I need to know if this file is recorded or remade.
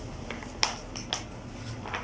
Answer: recorded